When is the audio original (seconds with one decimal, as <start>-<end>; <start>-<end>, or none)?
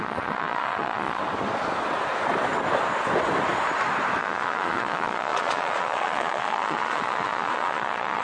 1.2-4.2